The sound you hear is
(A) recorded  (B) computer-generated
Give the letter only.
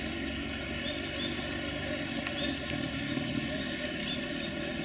A